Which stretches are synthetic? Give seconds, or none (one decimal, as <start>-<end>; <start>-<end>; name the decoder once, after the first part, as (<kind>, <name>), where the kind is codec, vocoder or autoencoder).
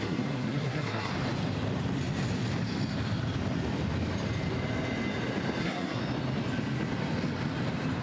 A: 0.0-1.1 (codec, SNAC); 5.6-6.0